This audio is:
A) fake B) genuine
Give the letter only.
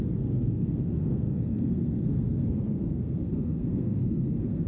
A